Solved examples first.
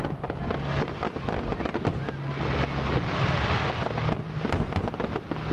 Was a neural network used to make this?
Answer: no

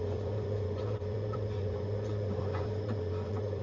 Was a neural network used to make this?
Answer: yes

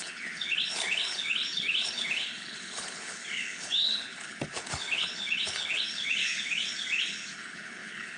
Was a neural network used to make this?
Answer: yes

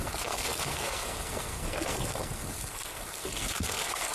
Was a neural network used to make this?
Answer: yes